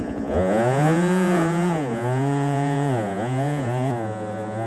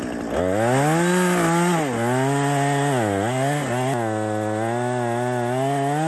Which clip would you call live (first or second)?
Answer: second